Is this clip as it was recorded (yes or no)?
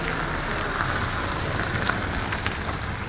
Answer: yes